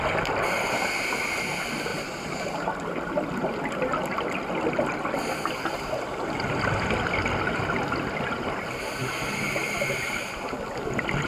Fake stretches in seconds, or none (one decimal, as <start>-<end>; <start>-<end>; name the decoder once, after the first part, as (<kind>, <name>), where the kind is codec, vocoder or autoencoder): none